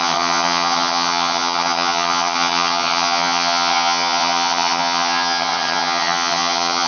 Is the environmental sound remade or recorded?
remade